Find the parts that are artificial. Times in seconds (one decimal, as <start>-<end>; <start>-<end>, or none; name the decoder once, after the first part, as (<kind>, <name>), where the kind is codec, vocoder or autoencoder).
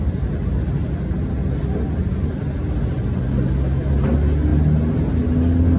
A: none